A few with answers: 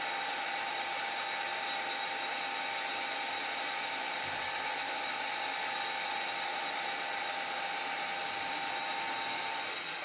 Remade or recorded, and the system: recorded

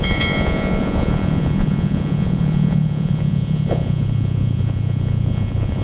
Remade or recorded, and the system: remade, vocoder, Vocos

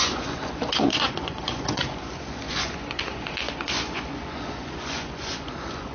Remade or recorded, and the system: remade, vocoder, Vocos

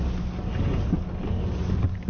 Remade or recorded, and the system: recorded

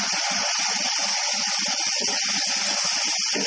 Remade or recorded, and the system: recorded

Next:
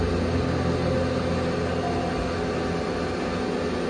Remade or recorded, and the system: recorded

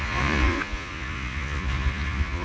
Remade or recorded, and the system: remade, vocoder, Vocos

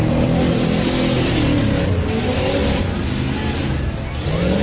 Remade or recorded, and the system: recorded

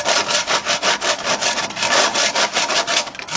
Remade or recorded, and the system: recorded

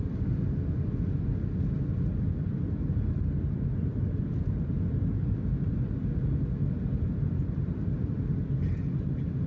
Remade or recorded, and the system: recorded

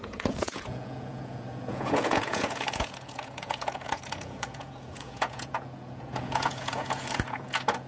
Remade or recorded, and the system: remade, vocoder, Vocos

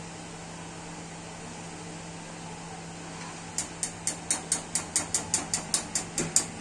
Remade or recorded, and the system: recorded